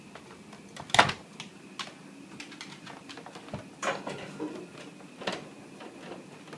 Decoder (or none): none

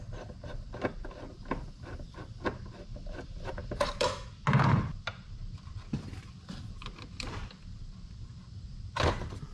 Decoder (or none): vocoder, BigVGAN v2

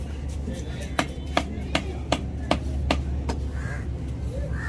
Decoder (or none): none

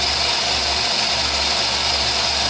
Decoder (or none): none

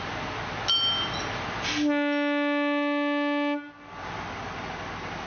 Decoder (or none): none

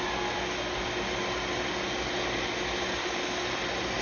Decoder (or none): none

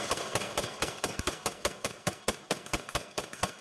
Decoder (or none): codec, SNAC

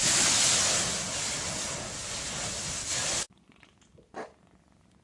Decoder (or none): none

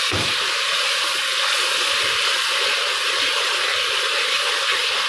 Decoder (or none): none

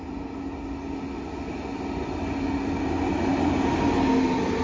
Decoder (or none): none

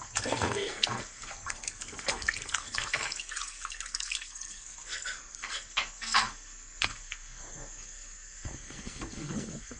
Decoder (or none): codec, SNAC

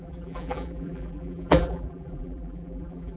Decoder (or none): vocoder, BigVGAN v2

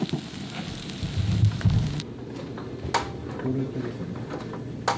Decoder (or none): none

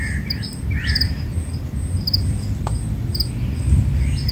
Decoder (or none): none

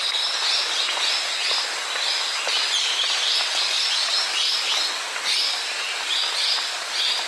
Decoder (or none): none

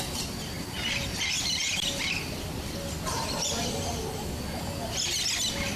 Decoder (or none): none